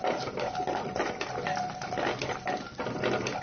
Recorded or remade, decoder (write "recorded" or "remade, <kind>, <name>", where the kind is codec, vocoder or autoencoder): recorded